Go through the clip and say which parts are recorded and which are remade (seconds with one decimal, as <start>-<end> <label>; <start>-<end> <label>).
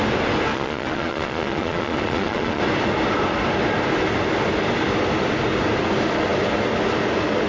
0.0-0.5 recorded; 0.5-2.6 remade; 2.6-7.5 recorded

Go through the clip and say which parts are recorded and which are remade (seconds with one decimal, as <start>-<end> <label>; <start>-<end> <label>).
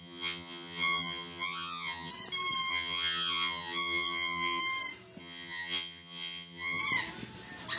0.0-2.1 remade; 2.1-2.7 recorded; 2.7-4.6 remade; 4.6-5.2 recorded; 5.2-6.8 remade; 6.8-7.8 recorded